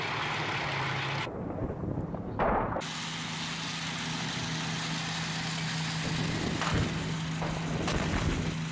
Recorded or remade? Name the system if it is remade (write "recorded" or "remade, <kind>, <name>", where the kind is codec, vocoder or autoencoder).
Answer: recorded